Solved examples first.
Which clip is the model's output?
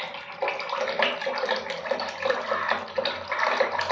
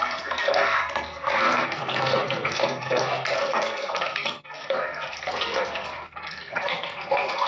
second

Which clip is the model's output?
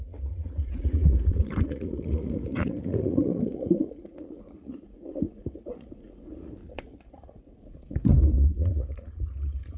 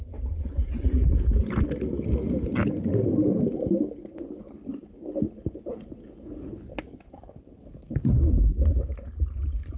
first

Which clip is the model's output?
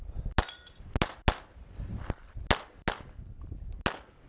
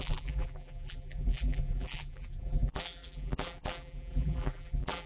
second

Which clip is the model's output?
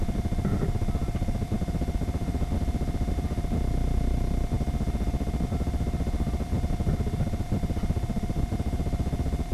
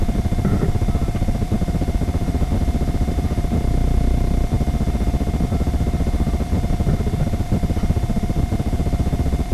second